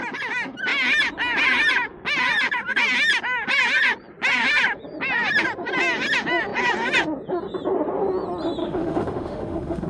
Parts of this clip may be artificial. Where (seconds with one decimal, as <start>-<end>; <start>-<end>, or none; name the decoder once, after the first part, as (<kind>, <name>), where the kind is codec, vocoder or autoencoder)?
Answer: 8.6-9.9 (autoencoder, DAC-VAE)

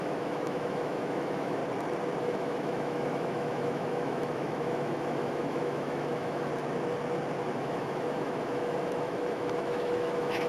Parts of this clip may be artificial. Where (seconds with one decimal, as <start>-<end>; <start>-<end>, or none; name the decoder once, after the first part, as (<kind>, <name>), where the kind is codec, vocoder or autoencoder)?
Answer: 0.0-1.6 (autoencoder, DAC-VAE); 2.2-6.5; 7.6-10.5